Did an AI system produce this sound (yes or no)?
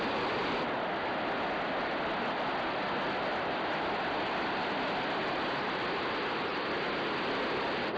no